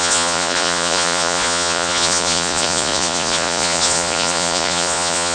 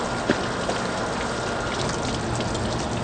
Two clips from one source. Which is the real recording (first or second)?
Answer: second